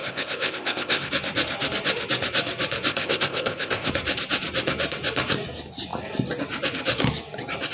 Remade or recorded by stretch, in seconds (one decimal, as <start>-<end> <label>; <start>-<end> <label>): 0.0-1.1 remade; 1.1-2.9 recorded; 2.9-3.9 remade; 3.9-7.7 recorded